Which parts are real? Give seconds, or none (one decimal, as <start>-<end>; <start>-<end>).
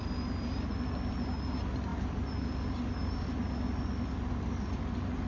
0.0-5.3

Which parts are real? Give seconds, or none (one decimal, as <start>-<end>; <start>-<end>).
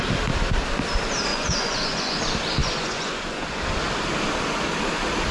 0.0-1.3; 2.2-2.6; 3.6-5.3